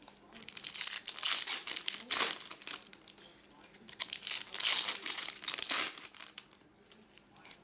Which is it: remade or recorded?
recorded